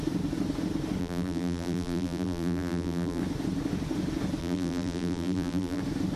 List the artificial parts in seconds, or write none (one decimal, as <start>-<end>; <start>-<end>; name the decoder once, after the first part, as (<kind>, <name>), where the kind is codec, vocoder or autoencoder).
1.0-3.2 (vocoder, BigVGAN v2); 4.4-5.8